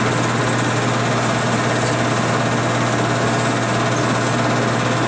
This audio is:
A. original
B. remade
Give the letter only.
A